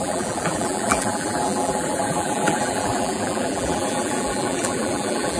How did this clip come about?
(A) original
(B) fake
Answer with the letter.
B